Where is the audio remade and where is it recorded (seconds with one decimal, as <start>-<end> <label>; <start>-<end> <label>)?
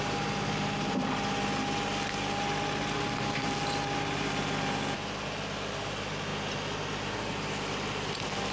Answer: 0.0-8.5 recorded